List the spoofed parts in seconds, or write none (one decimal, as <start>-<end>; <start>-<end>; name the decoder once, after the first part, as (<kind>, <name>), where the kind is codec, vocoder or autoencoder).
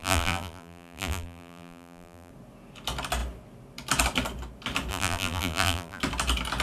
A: 0.0-2.3 (vocoder, BigVGAN v2); 4.9-6.0